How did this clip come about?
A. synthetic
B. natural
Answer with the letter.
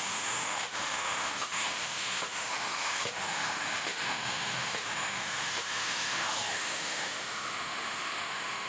A